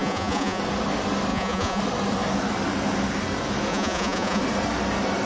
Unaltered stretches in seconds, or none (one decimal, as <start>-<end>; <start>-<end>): 0.6-1.3; 1.8-3.7; 4.4-5.3